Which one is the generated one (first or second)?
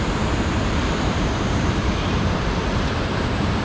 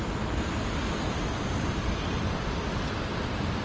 first